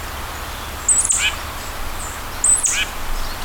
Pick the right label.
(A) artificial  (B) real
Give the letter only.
B